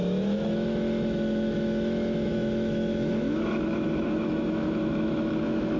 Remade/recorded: remade